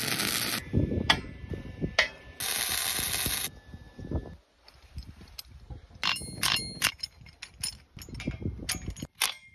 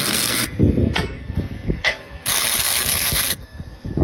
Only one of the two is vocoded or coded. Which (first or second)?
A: second